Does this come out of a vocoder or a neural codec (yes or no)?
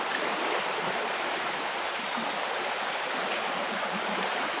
no